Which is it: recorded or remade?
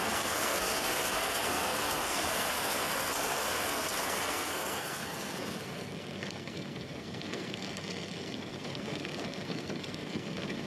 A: remade